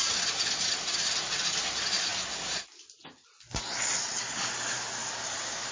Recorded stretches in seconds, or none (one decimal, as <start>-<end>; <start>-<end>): 0.0-5.7